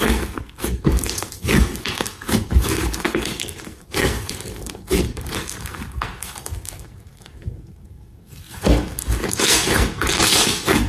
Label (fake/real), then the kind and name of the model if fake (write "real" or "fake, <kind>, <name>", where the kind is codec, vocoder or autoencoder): fake, codec, SNAC